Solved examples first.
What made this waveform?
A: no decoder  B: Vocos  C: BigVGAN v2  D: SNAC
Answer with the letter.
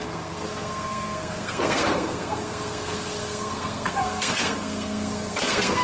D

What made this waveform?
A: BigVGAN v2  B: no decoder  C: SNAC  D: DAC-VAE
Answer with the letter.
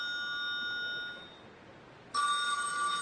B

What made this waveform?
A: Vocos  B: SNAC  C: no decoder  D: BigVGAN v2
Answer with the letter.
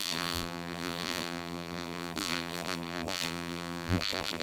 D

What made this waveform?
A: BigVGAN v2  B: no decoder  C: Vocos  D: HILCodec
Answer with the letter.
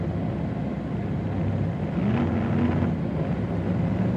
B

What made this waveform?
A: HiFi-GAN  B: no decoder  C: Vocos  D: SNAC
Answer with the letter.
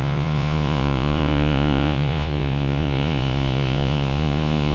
C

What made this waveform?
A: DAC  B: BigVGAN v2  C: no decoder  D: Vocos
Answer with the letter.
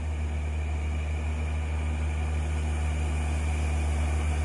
C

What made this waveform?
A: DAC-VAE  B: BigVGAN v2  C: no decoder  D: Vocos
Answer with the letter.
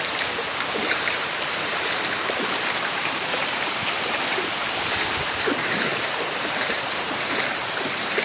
B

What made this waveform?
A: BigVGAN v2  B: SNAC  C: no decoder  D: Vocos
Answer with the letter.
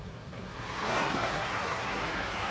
B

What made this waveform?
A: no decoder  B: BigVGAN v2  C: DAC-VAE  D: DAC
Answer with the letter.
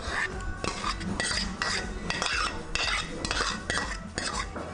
A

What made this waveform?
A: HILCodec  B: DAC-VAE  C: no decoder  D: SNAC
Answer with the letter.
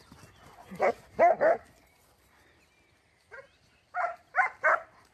C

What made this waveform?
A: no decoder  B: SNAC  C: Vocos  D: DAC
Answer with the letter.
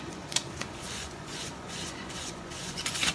C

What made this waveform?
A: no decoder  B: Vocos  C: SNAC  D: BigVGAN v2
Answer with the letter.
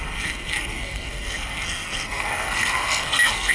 C